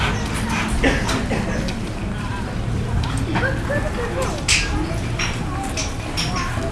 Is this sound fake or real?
real